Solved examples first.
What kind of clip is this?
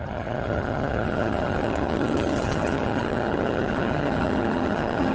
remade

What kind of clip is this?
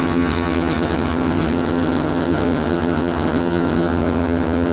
remade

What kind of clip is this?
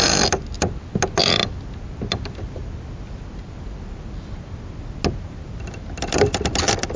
recorded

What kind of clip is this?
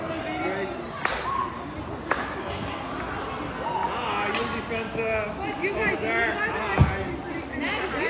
recorded